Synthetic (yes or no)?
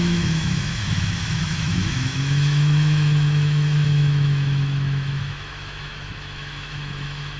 yes